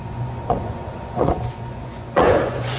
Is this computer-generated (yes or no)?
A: yes